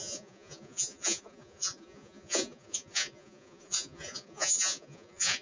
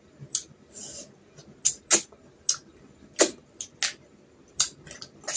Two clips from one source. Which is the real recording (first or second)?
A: second